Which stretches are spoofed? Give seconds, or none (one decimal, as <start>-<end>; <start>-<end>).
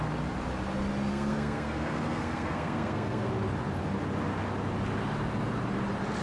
1.1-3.3